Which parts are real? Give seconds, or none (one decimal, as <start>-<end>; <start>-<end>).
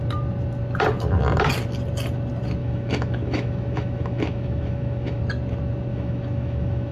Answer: 0.0-2.6; 5.2-5.9